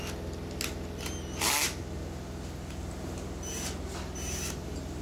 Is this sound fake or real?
real